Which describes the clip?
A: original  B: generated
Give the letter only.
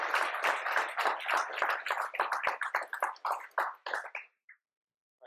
A